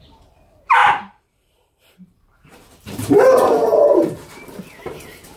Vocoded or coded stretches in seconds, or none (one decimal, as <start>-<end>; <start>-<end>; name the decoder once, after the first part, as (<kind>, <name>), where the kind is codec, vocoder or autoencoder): 0.0-5.4 (vocoder, BigVGAN v2)